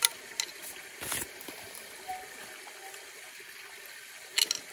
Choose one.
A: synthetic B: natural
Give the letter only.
B